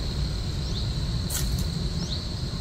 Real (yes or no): yes